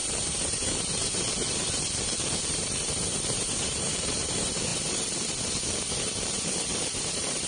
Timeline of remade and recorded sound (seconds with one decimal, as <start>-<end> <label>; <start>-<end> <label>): 0.0-7.5 remade